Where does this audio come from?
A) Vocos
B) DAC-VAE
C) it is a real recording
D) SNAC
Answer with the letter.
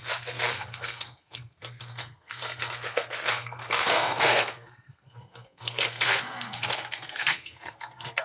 D